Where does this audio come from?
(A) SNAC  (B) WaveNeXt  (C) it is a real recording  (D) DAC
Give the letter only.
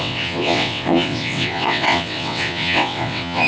B